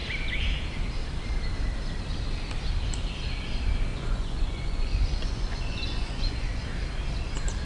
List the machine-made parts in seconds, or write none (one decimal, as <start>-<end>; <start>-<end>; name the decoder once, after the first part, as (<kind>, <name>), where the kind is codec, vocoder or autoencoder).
3.9-6.6 (vocoder, Vocos)